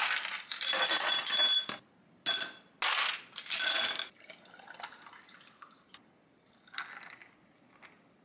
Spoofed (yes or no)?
no